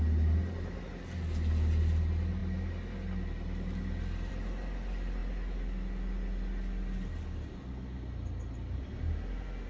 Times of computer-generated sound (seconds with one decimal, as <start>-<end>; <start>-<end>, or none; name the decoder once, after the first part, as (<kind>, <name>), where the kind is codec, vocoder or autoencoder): none